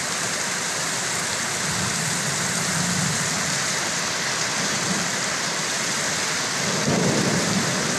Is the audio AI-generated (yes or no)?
yes